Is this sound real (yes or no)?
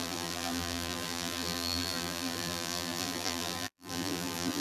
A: no